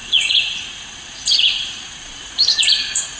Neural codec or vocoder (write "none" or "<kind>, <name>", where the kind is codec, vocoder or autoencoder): vocoder, Vocos